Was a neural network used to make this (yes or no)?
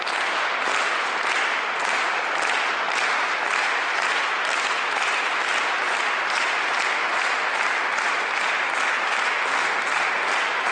no